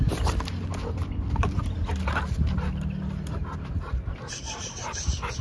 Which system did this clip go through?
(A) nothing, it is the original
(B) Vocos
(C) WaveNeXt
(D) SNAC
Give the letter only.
A